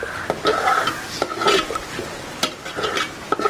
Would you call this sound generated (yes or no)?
no